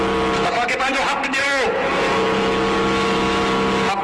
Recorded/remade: recorded